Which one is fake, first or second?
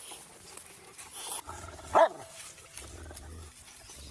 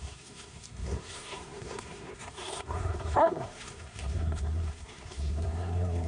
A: second